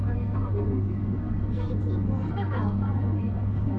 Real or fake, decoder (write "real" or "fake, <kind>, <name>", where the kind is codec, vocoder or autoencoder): fake, codec, SNAC